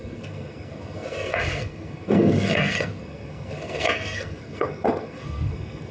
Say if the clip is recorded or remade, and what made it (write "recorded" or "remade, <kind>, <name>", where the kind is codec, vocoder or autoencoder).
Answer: remade, codec, SNAC